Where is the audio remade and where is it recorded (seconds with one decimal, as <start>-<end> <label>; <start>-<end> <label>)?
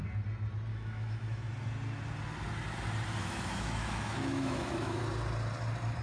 0.0-0.7 recorded; 0.7-1.5 remade; 1.5-3.2 recorded; 3.2-5.0 remade; 5.0-6.0 recorded